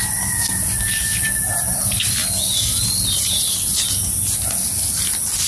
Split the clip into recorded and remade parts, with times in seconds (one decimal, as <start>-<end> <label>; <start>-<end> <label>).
0.0-1.7 remade; 1.7-5.5 recorded